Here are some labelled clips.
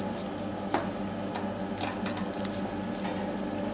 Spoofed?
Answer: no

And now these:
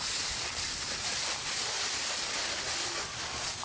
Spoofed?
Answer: no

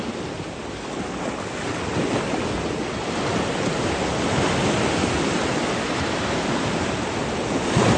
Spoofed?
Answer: no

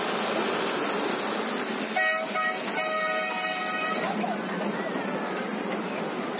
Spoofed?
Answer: no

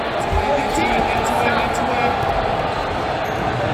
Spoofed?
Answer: yes